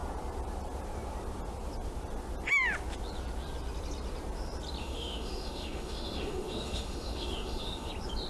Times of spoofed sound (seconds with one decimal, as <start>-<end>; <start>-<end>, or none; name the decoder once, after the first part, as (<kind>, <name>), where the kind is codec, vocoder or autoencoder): 4.8-7.9 (autoencoder, DAC-VAE)

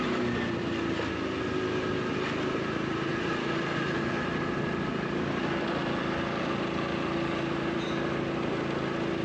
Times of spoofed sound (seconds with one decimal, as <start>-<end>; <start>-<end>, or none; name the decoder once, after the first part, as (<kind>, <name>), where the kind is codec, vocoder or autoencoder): none

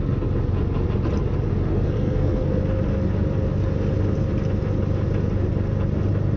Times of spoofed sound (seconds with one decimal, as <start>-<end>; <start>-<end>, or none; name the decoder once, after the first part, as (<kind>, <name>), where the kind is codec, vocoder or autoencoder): 1.7-2.6 (codec, SNAC)

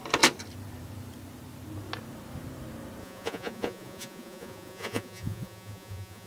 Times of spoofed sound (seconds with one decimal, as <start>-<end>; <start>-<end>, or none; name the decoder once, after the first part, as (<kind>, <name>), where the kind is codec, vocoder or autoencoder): 3.0-6.3 (vocoder, Vocos)

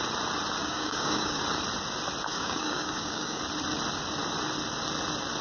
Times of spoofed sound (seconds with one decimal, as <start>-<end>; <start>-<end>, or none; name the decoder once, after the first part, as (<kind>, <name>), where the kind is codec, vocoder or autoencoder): 0.6-1.4 (codec, DAC); 2.3-3.4

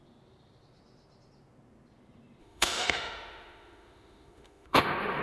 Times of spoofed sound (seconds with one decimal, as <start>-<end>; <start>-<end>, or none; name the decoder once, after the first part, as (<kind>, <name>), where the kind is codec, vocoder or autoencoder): 2.4-5.2 (autoencoder, DAC-VAE)